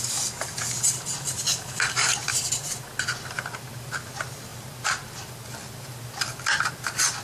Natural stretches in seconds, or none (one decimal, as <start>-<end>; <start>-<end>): 0.0-1.5; 2.1-7.2